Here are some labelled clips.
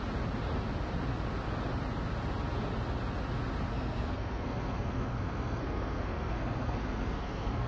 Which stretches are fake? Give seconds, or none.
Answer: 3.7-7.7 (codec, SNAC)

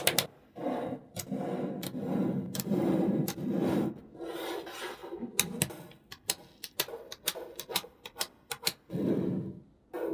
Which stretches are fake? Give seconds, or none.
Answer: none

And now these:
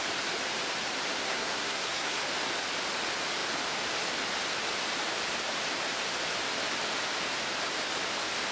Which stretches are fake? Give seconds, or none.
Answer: 1.2-2.2 (codec, SNAC)

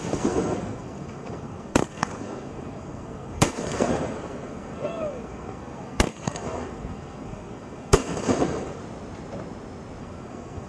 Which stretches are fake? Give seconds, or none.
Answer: 0.0-8.8 (codec, SNAC); 10.0-10.7